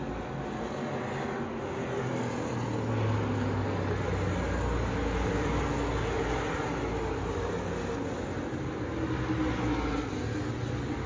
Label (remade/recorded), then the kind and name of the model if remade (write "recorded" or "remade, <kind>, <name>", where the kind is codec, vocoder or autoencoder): recorded